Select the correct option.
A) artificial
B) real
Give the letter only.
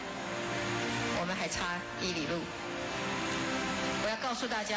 B